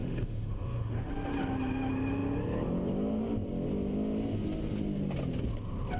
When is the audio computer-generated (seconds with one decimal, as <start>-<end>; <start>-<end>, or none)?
0.0-1.1